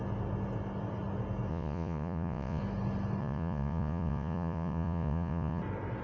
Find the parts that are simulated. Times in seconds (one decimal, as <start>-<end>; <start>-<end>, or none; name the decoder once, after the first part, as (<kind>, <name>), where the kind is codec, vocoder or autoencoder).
1.5-2.6 (vocoder, Vocos); 3.2-5.6